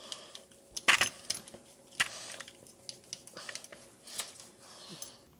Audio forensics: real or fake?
real